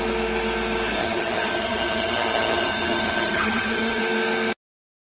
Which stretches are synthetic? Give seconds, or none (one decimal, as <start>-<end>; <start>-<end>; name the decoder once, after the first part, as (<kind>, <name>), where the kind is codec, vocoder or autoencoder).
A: 1.0-4.0 (vocoder, HiFi-GAN)